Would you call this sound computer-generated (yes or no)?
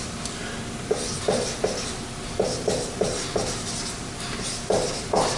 no